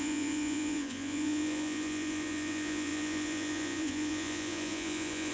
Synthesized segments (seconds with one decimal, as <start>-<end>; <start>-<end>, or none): 0.0-5.3